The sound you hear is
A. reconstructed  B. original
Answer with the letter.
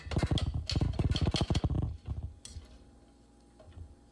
B